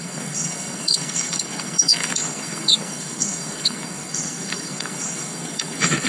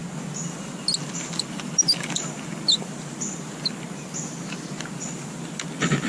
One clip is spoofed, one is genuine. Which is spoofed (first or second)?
first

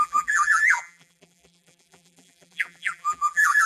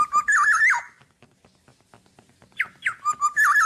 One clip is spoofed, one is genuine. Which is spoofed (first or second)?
first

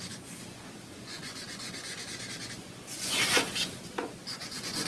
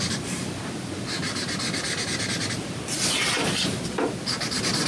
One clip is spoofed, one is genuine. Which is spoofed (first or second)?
first